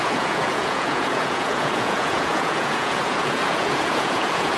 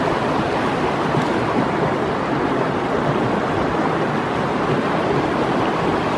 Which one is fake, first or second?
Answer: first